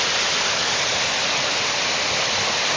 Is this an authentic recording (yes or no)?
yes